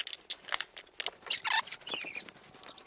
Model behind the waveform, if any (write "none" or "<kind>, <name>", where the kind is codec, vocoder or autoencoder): none